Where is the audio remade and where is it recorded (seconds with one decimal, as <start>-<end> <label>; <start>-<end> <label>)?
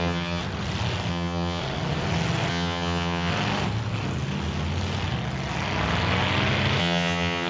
0.0-0.4 remade; 0.4-1.1 recorded; 1.1-1.6 remade; 1.6-2.5 recorded; 2.5-3.3 remade; 3.3-6.8 recorded; 6.8-7.5 remade